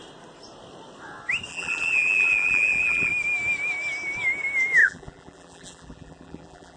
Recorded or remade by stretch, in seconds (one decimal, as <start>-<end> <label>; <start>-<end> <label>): 0.0-1.5 recorded; 1.5-3.1 remade; 3.1-4.8 recorded; 4.8-6.8 remade